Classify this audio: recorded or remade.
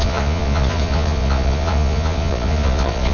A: remade